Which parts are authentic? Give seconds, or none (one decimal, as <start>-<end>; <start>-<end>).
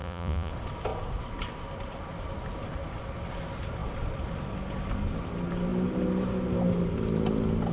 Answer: 0.5-7.7